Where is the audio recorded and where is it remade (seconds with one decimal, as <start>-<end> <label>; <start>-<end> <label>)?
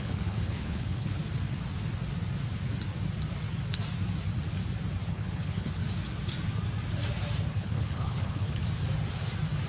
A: 0.0-1.2 remade; 1.2-5.1 recorded; 5.1-5.8 remade; 5.8-7.5 recorded; 7.5-8.6 remade; 8.6-9.7 recorded